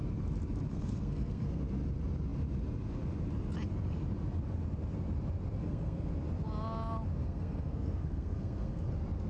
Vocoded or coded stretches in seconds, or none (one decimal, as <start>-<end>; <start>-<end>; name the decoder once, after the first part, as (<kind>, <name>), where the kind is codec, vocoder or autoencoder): 0.7-1.6 (codec, SNAC); 5.6-6.1; 7.2-8.9